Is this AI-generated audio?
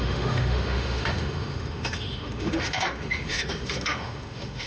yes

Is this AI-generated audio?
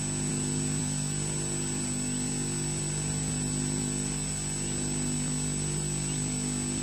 no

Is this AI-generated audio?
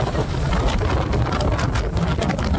no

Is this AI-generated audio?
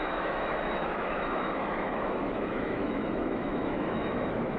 yes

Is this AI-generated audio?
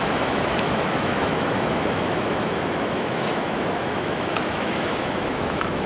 yes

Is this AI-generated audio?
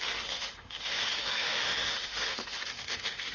yes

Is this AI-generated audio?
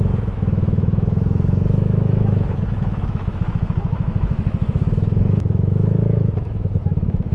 yes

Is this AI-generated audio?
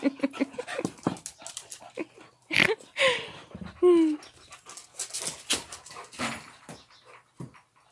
no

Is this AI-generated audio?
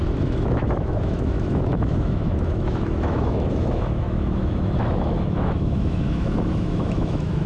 yes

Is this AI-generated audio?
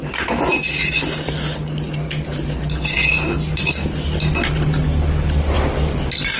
no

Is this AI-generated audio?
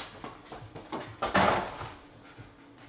no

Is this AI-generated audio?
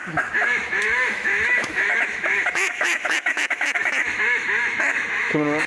yes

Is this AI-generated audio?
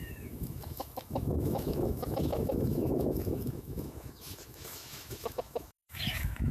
yes